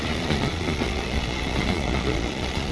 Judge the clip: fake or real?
fake